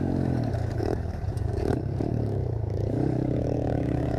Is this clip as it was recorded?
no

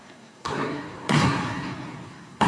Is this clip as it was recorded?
no